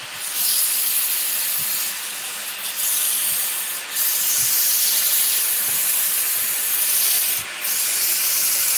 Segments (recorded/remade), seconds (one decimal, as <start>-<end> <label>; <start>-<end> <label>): 0.0-8.8 recorded